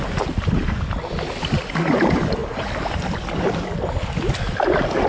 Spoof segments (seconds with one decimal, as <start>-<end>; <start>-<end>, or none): none